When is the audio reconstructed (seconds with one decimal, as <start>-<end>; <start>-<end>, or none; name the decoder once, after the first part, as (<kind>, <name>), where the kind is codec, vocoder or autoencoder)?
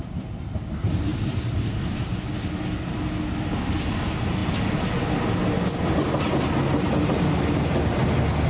1.1-2.1 (vocoder, BigVGAN v2)